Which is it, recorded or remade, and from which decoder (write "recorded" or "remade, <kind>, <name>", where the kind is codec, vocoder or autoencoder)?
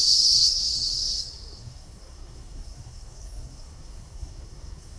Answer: remade, codec, SNAC